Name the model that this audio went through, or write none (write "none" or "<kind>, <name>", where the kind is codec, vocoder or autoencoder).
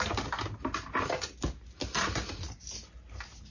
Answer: none